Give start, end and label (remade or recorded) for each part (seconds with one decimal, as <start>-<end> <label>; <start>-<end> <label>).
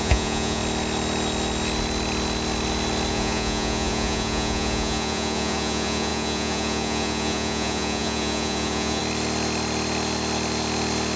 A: 0.0-0.6 remade; 0.6-3.1 recorded; 3.1-9.0 remade; 9.0-11.2 recorded